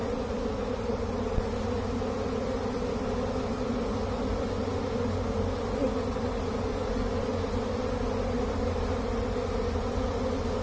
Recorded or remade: recorded